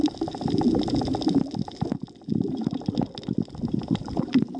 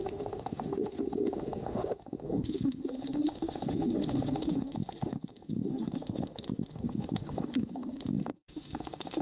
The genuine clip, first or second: first